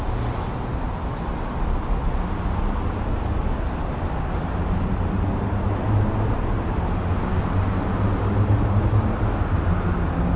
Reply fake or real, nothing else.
real